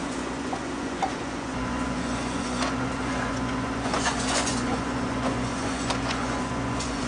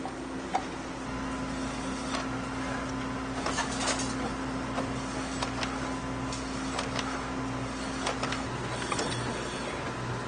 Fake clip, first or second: first